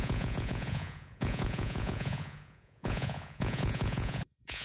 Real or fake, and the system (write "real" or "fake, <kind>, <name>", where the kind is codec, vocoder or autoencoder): fake, vocoder, Vocos